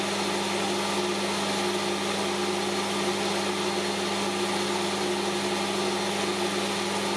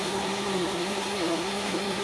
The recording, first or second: first